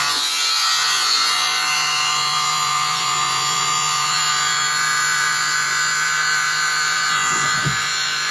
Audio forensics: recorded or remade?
remade